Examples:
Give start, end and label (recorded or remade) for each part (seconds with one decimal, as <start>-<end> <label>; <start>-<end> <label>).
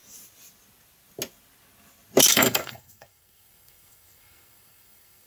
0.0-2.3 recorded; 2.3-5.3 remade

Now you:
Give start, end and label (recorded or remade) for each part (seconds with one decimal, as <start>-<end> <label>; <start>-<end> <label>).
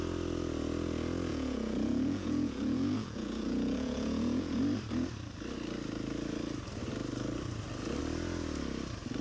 0.0-1.3 recorded; 1.3-4.6 remade; 4.6-9.2 recorded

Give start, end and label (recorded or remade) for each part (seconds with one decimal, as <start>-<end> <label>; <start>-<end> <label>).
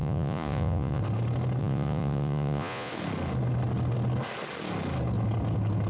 0.0-1.0 remade; 1.0-1.6 recorded; 1.6-2.9 remade; 2.9-5.9 recorded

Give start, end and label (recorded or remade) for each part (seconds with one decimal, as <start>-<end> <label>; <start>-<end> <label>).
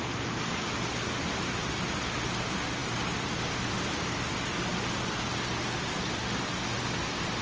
0.0-7.4 recorded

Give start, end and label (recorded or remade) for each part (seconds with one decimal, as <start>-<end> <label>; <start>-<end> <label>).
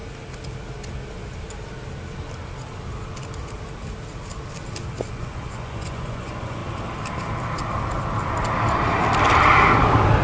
0.0-5.1 recorded; 5.1-6.6 remade; 6.6-10.2 recorded